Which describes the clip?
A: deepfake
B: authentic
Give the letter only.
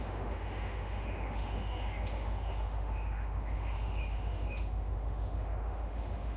A